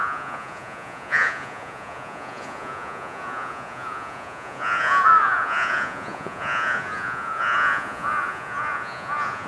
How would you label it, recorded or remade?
remade